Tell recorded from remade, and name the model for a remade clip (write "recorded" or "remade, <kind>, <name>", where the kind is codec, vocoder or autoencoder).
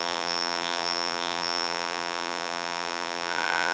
remade, vocoder, BigVGAN v2